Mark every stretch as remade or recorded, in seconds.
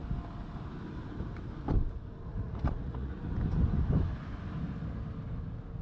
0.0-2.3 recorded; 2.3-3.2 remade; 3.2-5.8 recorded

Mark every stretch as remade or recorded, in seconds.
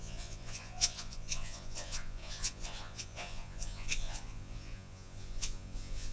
0.0-6.1 remade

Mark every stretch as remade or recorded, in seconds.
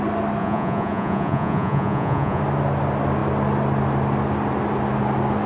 0.0-0.4 recorded; 0.4-2.4 remade; 2.4-5.5 recorded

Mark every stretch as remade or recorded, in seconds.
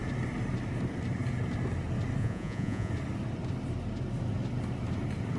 0.0-2.2 recorded; 2.2-2.9 remade; 2.9-5.4 recorded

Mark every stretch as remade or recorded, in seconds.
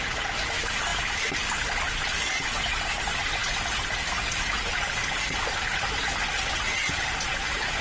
0.0-7.8 recorded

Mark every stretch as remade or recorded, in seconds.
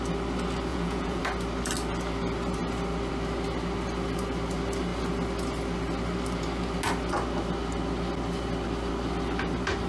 0.0-0.7 recorded; 0.7-1.2 remade; 1.2-9.9 recorded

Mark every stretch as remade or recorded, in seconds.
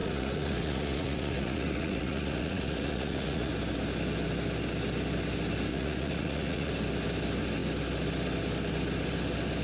0.0-3.5 remade; 3.5-5.7 recorded; 5.7-6.7 remade; 6.7-9.6 recorded